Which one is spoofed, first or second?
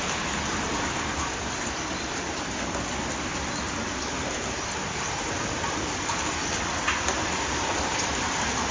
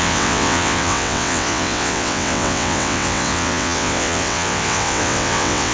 second